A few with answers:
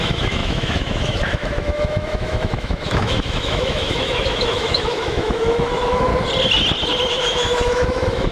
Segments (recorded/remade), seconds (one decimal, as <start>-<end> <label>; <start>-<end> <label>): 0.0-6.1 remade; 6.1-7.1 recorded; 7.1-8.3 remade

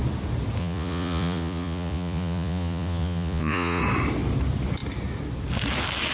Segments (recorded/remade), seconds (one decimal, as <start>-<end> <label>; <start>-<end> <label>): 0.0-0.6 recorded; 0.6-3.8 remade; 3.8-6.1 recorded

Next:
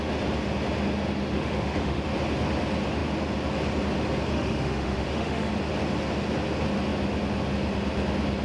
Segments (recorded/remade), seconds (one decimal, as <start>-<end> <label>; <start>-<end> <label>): 0.0-1.3 recorded; 1.3-2.0 remade; 2.0-4.3 recorded; 4.3-5.5 remade; 5.5-8.4 recorded

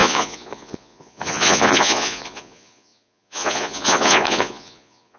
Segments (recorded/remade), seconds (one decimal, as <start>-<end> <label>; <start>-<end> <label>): 0.0-5.2 remade